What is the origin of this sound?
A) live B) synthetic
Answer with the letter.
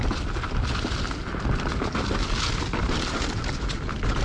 A